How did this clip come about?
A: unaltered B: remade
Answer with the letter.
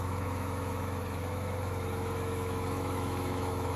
B